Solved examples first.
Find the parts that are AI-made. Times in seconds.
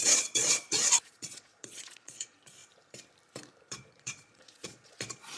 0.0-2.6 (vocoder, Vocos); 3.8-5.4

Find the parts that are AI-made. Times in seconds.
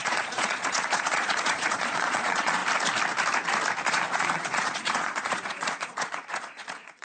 0.0-2.6 (vocoder, Vocos); 3.9-7.0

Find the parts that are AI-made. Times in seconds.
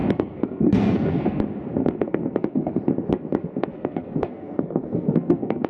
0.0-1.4 (codec, SNAC); 1.8-2.8; 3.5-5.7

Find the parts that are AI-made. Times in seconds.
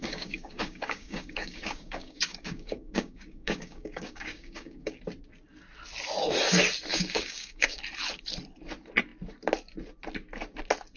0.0-5.0 (codec, DAC); 6.9-7.8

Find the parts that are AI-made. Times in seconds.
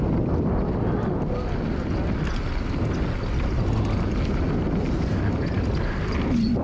none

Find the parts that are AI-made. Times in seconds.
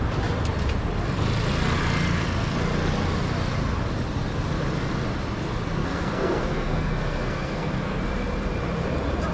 5.8-8.0 (codec, SNAC)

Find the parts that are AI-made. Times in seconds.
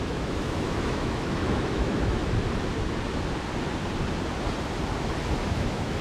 0.0-2.2 (autoencoder, DAC-VAE); 5.5-6.0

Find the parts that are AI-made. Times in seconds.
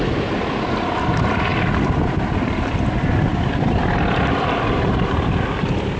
none